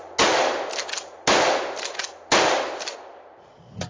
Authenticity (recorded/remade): recorded